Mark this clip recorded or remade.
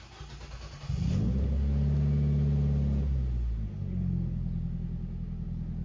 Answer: recorded